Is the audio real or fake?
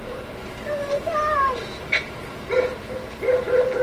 fake